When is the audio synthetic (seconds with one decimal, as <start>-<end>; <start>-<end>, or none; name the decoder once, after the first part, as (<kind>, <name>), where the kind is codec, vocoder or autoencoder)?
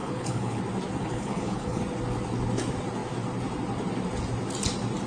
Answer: 0.0-0.6 (codec, HILCodec); 1.0-1.8